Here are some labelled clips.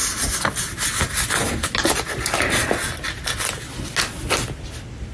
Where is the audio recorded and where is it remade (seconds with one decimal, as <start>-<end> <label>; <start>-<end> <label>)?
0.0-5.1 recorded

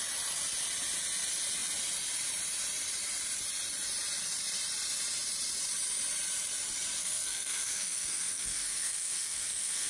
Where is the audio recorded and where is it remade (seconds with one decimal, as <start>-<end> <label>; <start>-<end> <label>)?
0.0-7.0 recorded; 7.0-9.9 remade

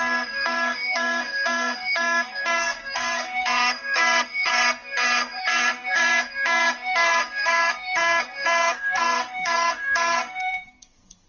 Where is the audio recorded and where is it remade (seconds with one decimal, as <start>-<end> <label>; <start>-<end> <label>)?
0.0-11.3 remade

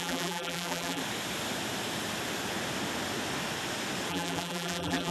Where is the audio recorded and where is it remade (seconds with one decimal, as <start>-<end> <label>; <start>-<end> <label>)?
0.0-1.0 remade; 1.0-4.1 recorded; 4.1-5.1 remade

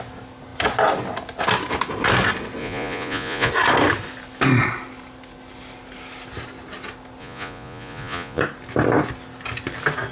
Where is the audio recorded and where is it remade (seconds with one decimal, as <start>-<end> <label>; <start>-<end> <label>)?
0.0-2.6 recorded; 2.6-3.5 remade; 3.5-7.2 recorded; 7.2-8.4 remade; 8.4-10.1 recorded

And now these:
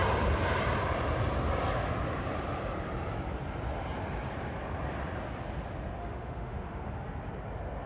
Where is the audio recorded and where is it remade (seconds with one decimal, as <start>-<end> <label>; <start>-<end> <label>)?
0.0-6.0 recorded; 6.0-6.9 remade; 6.9-7.9 recorded

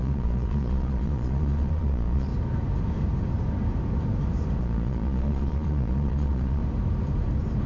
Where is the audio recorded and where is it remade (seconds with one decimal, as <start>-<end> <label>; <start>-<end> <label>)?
0.0-2.3 remade; 2.3-4.6 recorded; 4.6-6.6 remade; 6.6-7.7 recorded